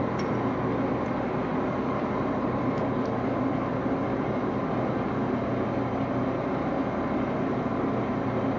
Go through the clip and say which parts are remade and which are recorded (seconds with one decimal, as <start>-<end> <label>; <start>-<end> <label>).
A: 0.0-8.6 recorded